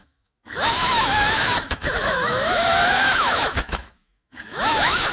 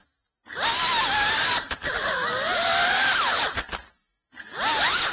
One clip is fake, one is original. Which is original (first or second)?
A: second